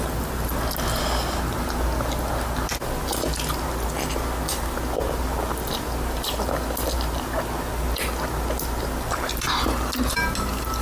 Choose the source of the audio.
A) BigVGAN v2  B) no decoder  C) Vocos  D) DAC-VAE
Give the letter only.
B